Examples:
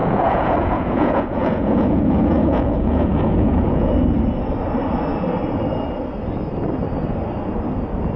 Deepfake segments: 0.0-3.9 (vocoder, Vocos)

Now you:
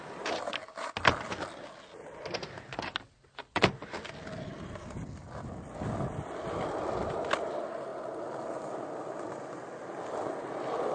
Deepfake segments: none

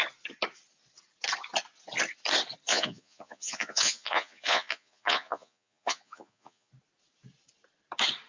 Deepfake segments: 2.7-6.7 (vocoder, Vocos)

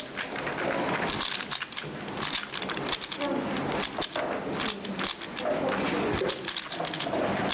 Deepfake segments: none

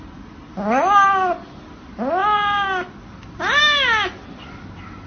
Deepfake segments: none